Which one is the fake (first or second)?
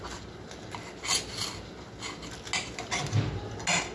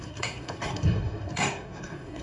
second